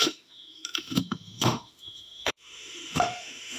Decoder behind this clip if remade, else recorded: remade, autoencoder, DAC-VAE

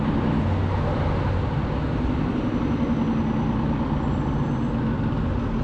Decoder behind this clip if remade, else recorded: recorded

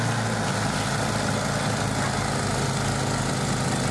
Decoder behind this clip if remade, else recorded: recorded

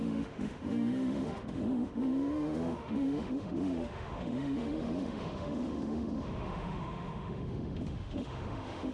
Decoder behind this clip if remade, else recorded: remade, autoencoder, DAC-VAE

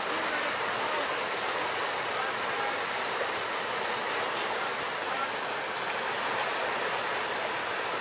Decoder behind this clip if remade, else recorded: recorded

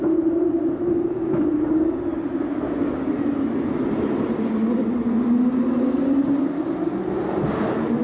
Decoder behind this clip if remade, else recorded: recorded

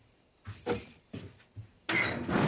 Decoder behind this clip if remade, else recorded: recorded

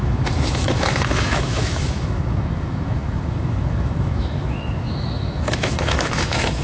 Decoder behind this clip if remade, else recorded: remade, autoencoder, DAC-VAE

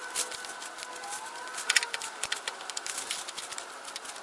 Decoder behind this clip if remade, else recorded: recorded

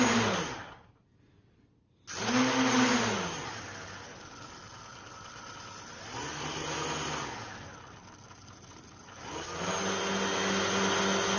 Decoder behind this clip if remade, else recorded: recorded